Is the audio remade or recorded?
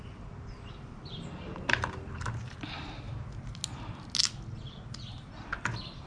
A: recorded